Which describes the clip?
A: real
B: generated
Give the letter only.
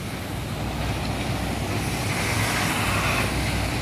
A